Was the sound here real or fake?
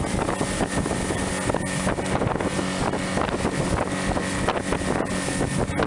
real